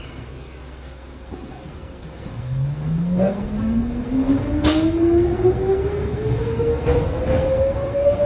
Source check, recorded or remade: remade